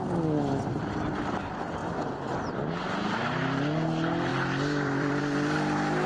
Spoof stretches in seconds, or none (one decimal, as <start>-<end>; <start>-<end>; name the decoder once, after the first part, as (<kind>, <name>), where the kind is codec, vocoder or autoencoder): 1.8-2.7 (vocoder, BigVGAN v2); 4.3-5.2